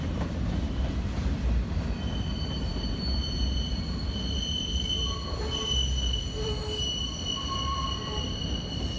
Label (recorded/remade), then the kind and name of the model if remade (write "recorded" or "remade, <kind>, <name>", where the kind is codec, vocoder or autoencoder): recorded